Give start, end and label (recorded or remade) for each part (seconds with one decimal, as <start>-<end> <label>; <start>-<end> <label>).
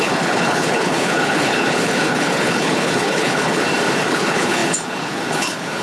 0.0-3.6 remade; 3.6-4.1 recorded; 4.1-5.8 remade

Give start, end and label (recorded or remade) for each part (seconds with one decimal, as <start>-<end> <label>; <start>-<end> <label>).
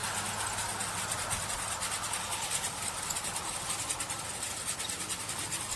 0.0-5.8 recorded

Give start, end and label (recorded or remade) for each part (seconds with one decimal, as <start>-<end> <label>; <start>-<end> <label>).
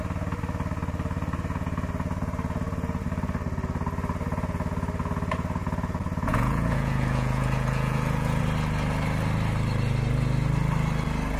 0.0-6.3 recorded; 6.3-8.4 remade; 8.4-11.4 recorded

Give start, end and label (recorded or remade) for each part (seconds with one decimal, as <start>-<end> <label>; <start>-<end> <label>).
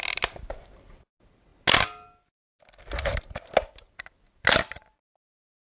0.0-5.6 recorded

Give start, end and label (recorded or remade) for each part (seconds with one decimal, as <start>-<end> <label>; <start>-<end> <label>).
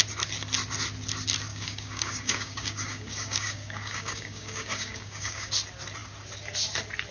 0.0-1.5 recorded; 1.5-5.5 remade; 5.5-7.1 recorded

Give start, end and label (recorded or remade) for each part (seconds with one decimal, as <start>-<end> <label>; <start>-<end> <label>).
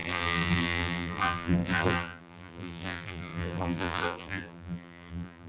0.0-5.5 remade